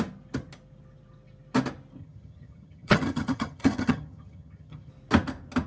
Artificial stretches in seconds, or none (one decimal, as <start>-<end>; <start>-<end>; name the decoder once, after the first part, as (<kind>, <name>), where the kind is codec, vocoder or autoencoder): 2.0-4.9 (vocoder, HiFi-GAN)